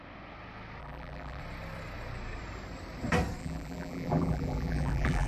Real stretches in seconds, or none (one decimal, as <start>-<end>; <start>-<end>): 0.0-0.8; 1.4-3.4